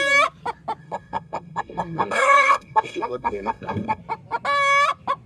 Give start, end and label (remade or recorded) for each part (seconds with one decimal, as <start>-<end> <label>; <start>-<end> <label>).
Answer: 0.0-0.8 recorded; 0.8-4.0 remade; 4.0-5.3 recorded